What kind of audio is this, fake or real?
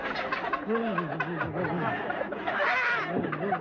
real